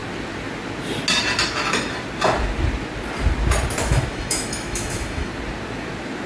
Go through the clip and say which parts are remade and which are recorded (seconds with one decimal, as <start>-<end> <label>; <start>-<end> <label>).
0.0-3.8 recorded; 3.8-5.3 remade; 5.3-6.3 recorded